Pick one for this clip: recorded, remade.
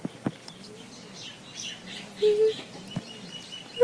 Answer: recorded